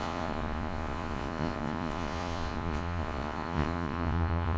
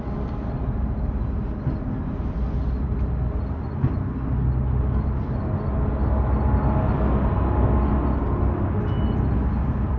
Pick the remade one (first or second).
first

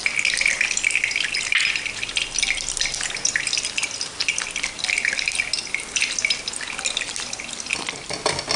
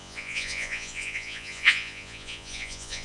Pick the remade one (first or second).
second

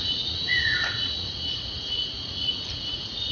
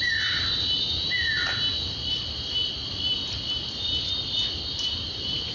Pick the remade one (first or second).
first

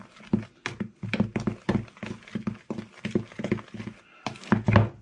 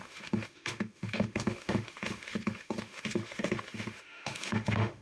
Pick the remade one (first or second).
second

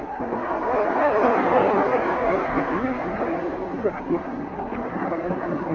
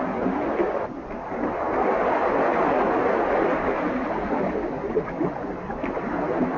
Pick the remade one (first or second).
first